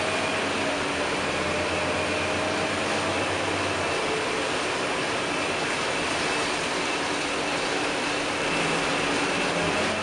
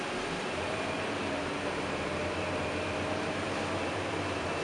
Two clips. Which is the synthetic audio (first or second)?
second